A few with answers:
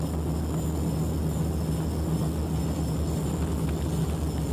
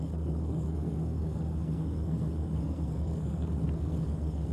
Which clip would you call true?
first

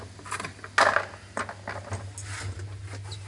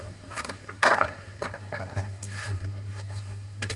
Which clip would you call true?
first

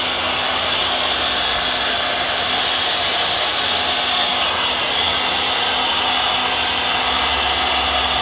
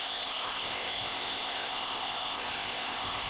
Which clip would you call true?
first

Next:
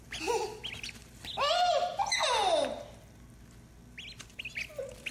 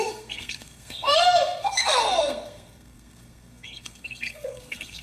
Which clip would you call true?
first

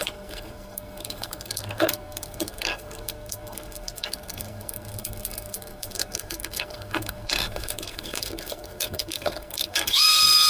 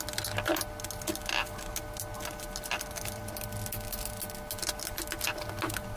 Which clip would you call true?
second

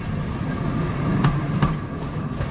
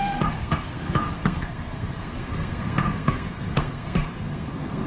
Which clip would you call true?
first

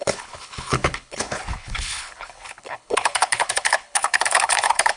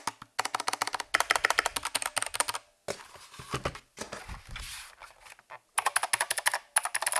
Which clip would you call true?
second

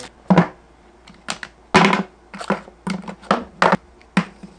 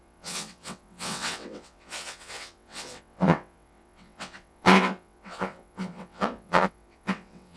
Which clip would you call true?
first